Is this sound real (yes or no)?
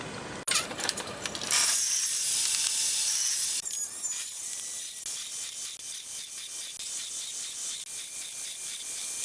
yes